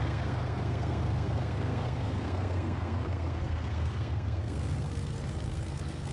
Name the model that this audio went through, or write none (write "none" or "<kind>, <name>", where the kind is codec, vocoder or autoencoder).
codec, SNAC